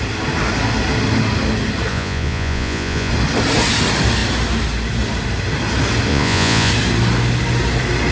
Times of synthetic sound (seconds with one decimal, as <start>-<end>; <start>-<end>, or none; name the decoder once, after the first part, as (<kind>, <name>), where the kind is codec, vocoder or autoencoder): 1.9-3.1 (vocoder, Vocos); 6.1-6.7